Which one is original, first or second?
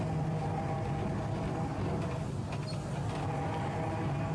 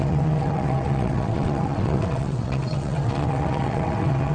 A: first